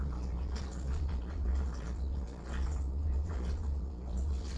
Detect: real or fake fake